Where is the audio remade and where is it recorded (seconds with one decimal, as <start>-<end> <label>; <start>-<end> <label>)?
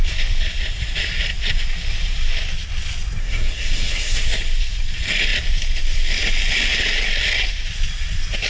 0.0-3.2 recorded; 3.2-4.2 remade; 4.2-8.5 recorded